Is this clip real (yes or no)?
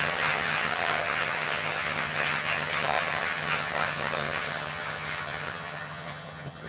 no